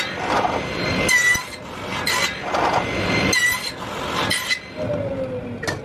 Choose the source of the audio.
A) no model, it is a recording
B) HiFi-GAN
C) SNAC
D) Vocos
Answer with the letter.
A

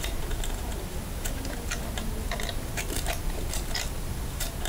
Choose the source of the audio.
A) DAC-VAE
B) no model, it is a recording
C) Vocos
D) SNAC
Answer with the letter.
B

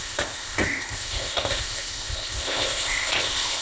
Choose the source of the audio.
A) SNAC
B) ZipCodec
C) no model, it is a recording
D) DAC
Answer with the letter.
B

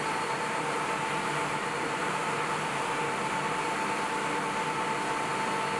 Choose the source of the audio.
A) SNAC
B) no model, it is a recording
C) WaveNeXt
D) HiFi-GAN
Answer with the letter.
B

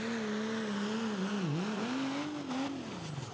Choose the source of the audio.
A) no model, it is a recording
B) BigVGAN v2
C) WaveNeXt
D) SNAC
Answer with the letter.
A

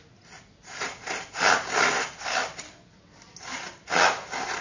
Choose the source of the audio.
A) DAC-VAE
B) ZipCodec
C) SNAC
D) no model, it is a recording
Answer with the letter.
D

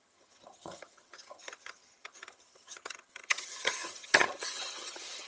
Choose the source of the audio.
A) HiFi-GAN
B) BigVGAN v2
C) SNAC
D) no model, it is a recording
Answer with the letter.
A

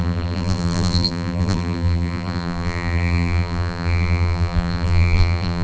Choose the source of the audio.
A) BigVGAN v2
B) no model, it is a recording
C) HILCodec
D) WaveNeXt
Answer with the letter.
A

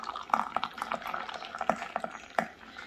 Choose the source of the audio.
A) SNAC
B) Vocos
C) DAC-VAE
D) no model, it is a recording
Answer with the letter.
D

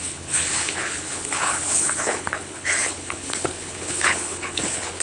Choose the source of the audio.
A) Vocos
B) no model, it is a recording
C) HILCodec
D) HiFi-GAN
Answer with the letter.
C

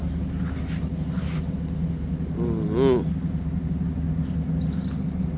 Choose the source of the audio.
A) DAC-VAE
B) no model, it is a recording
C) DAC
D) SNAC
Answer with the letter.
B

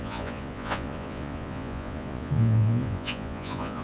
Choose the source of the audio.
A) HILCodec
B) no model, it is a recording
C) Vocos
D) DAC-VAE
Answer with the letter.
C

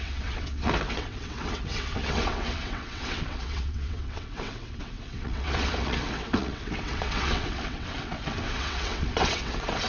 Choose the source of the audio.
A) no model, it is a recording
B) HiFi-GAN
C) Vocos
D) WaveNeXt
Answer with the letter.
D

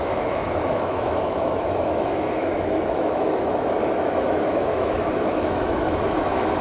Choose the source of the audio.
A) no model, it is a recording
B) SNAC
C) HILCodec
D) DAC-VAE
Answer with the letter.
D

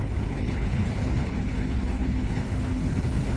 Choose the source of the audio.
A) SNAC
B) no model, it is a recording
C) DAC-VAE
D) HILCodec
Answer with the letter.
D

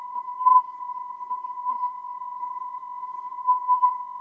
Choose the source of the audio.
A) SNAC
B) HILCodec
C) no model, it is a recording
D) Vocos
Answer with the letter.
A